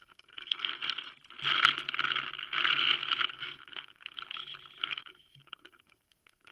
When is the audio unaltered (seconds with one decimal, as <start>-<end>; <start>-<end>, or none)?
0.7-3.3; 4.2-4.8